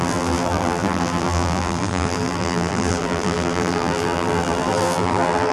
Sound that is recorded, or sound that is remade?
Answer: remade